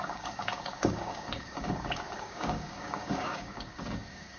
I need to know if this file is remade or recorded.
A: remade